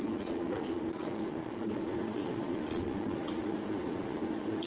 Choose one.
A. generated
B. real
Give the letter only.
A